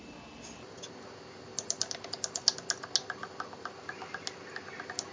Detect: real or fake real